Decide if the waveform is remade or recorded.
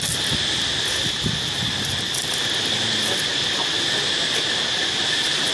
recorded